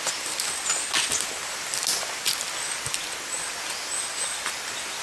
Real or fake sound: real